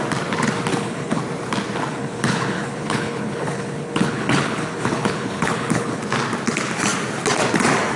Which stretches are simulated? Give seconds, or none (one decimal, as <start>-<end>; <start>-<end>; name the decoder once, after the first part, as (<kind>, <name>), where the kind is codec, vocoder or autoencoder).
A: 0.7-1.2 (codec, HILCodec); 1.9-6.0